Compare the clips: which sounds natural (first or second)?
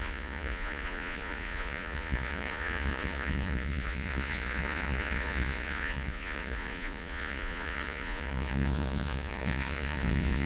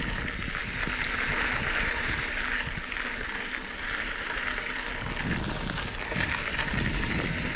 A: second